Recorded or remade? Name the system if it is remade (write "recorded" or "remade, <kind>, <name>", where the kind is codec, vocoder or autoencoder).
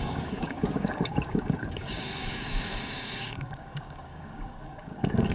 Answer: remade, codec, DAC